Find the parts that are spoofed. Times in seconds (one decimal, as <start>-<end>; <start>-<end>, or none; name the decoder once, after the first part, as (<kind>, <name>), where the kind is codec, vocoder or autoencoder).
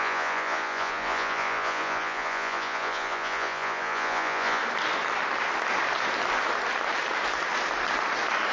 0.0-4.6 (vocoder, Vocos)